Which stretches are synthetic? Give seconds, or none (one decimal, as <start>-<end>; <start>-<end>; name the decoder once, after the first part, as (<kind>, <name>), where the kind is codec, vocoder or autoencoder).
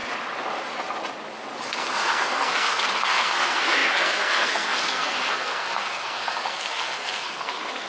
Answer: 1.6-7.9 (codec, SNAC)